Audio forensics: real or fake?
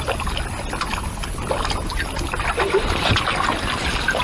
real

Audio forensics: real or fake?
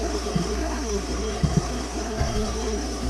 fake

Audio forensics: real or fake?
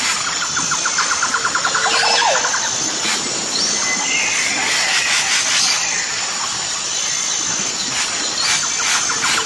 real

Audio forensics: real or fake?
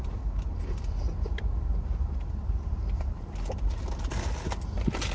real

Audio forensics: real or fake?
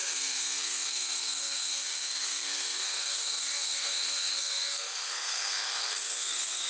fake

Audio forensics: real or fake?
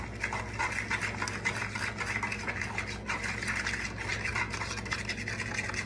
real